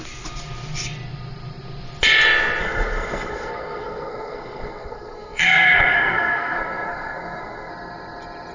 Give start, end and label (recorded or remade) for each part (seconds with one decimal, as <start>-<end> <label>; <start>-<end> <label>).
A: 0.0-2.6 recorded; 2.6-7.7 remade; 7.7-8.5 recorded